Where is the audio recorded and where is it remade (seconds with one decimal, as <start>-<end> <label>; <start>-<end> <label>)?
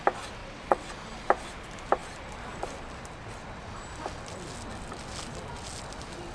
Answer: 0.0-0.4 recorded; 0.4-0.9 remade; 0.9-6.3 recorded